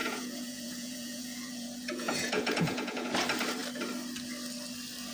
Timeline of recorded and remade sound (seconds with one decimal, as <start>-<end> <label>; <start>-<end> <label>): 0.0-3.1 remade; 3.1-5.1 recorded